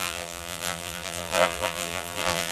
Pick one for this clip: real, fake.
fake